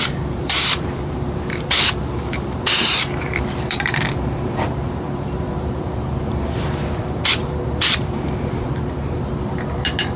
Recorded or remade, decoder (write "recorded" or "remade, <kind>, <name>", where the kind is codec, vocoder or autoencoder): remade, vocoder, BigVGAN v2